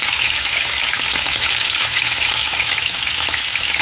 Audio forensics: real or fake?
fake